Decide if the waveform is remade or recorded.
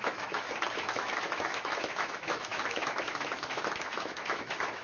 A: remade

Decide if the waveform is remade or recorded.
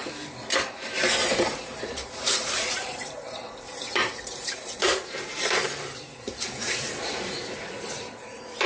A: remade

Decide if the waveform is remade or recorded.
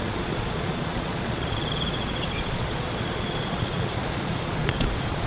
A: remade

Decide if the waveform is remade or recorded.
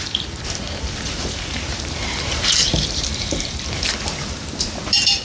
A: remade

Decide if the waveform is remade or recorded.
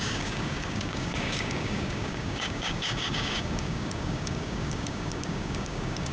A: remade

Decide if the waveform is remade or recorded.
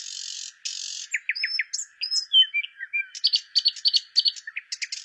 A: recorded